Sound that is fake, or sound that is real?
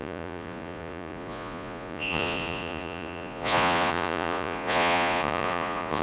fake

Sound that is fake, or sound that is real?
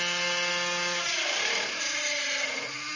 real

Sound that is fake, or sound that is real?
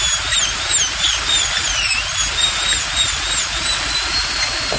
real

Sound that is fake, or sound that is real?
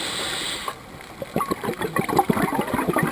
real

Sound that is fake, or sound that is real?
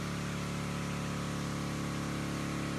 real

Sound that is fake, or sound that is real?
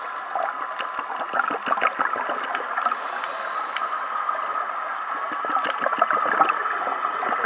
real